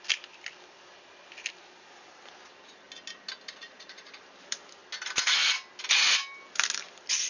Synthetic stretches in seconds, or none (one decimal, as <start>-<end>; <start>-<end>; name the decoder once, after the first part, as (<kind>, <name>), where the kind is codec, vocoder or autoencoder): 3.6-4.1 (vocoder, BigVGAN v2)